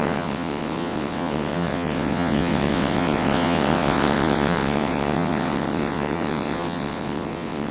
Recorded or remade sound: remade